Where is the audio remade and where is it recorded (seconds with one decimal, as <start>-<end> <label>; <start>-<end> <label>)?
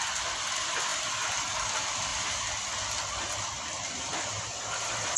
0.0-5.2 recorded